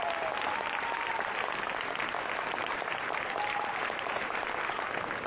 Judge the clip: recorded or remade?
remade